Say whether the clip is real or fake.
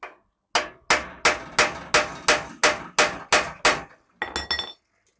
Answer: real